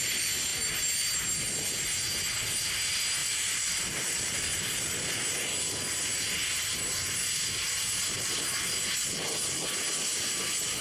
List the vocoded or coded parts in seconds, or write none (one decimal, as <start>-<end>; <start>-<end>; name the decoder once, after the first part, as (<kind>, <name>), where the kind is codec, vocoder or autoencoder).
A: 3.2-4.6 (vocoder, BigVGAN v2)